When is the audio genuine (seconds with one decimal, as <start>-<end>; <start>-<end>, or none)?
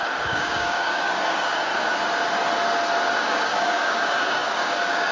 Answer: 1.7-3.2